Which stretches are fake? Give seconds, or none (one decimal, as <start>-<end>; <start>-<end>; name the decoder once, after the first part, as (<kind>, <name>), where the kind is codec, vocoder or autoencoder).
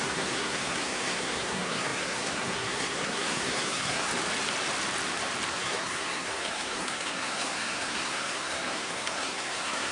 0.0-4.1 (codec, SNAC); 5.5-9.9